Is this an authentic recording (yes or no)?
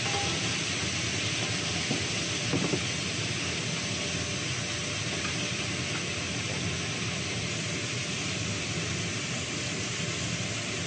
yes